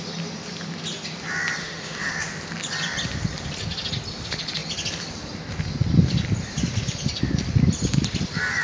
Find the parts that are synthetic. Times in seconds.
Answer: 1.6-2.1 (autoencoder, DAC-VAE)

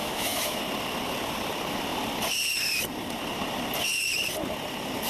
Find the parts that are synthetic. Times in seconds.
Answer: 0.0-0.6 (autoencoder, DAC-VAE)

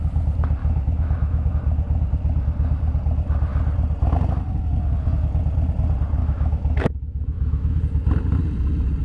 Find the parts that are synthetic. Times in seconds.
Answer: 0.6-1.5 (autoencoder, DAC-VAE); 6.2-7.8